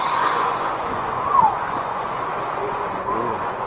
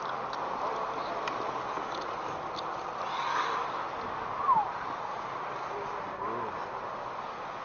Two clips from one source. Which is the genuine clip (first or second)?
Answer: second